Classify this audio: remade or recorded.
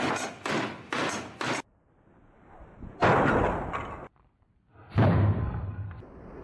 recorded